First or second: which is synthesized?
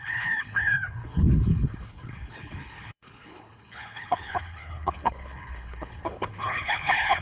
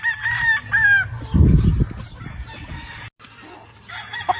first